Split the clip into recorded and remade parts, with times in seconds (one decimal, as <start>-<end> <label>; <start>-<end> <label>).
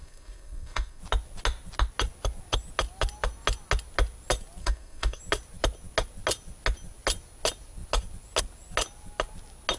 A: 0.0-1.0 remade; 1.0-4.6 recorded; 4.6-5.2 remade; 5.2-9.8 recorded